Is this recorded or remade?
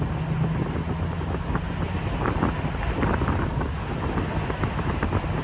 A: recorded